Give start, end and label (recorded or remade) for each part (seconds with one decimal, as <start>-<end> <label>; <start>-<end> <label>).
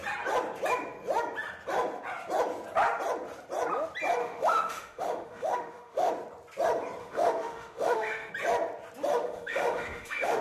0.0-4.2 recorded; 4.2-6.1 remade; 6.1-7.0 recorded; 7.0-8.3 remade; 8.3-9.1 recorded; 9.1-10.4 remade